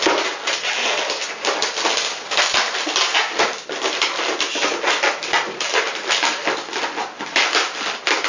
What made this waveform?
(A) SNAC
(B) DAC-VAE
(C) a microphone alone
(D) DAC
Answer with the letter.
C